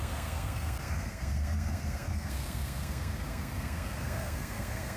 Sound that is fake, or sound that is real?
fake